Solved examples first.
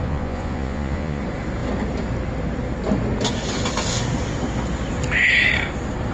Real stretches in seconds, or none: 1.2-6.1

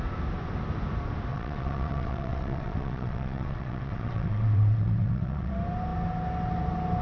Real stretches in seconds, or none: 0.0-1.3; 5.5-7.0

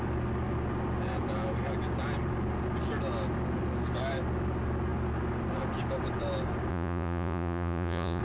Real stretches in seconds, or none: 0.0-6.7

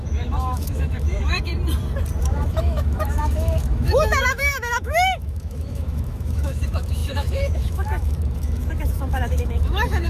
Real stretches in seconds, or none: 1.5-2.2

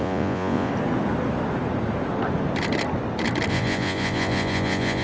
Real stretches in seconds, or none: 0.7-3.5

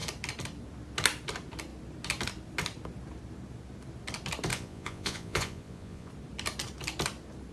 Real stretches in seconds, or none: 0.0-4.5; 6.1-7.5